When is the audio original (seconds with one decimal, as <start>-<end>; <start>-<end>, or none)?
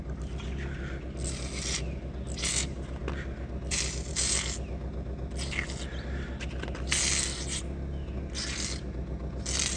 0.0-9.8